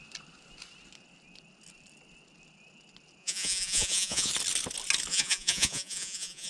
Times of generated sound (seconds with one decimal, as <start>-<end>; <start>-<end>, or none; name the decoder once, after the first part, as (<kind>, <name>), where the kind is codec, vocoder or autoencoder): 3.2-4.3 (vocoder, Vocos); 5.1-6.5

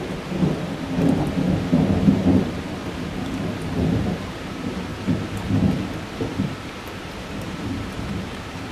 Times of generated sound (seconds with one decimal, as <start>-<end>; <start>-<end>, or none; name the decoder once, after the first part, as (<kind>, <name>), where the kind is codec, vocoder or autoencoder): 0.0-2.8 (vocoder, BigVGAN v2); 3.7-4.9; 7.2-8.7

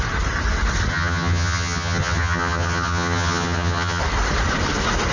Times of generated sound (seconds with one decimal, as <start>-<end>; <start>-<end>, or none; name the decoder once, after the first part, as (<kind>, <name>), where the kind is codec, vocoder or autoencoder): 0.9-4.0 (vocoder, HiFi-GAN)

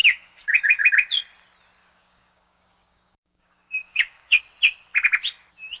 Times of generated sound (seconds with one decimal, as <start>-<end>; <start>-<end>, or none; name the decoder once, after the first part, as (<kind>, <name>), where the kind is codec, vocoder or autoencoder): 0.0-0.9 (codec, DAC); 1.8-4.4